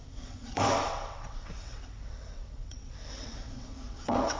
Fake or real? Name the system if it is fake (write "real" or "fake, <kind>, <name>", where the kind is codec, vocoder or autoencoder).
fake, vocoder, WaveNeXt